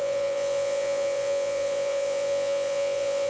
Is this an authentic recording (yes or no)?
no